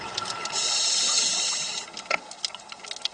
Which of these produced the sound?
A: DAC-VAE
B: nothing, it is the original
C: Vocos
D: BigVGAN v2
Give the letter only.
B